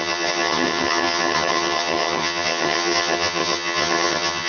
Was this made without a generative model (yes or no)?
no